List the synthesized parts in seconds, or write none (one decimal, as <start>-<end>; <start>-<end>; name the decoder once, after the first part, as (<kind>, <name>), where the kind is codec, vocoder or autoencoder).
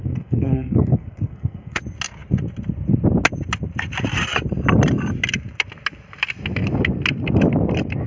0.0-1.8 (codec, SNAC)